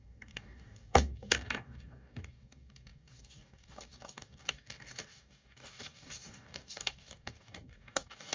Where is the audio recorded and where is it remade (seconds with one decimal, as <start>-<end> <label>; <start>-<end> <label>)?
0.0-8.3 remade